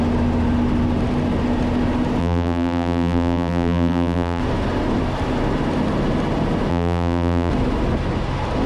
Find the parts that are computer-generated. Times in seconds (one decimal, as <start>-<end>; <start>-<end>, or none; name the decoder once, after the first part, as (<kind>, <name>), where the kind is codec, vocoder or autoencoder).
2.2-4.4 (vocoder, BigVGAN v2); 6.7-7.5